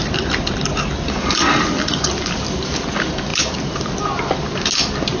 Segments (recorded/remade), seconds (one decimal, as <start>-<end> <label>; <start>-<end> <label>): 0.0-5.2 recorded